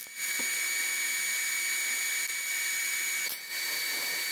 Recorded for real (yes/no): yes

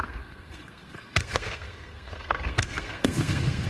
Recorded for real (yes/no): no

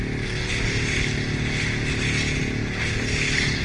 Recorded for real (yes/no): yes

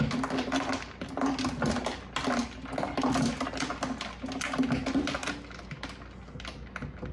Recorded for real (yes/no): yes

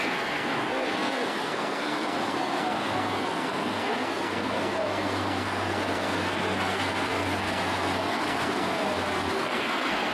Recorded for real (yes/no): no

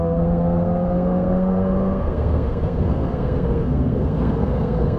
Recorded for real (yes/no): no